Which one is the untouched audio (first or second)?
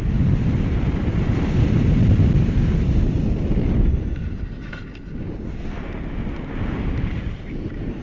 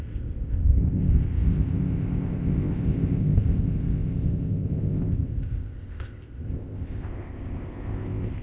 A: first